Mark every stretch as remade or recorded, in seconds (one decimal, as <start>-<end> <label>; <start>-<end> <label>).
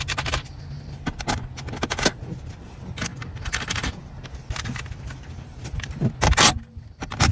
0.0-7.3 recorded